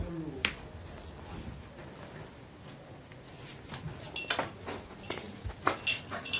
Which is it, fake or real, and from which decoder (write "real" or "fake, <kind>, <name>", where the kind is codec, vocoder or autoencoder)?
real